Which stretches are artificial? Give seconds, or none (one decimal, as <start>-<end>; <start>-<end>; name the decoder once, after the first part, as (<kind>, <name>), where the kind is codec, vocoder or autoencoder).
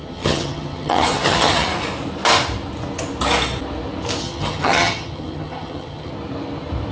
0.0-1.7 (vocoder, HiFi-GAN); 4.2-6.1